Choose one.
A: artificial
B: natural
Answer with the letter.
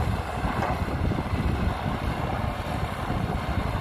B